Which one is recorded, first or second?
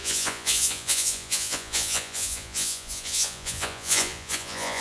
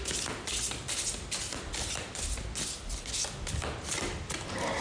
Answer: second